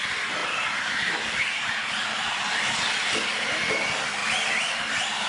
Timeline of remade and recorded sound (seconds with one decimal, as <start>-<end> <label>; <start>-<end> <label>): 0.0-0.4 recorded; 0.4-2.8 remade; 2.8-5.3 recorded